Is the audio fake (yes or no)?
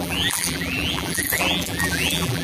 yes